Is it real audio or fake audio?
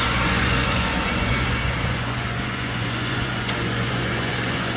fake